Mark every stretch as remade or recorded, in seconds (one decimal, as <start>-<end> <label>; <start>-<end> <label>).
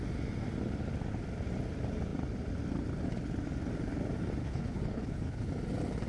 0.0-4.4 recorded; 4.4-5.5 remade; 5.5-6.1 recorded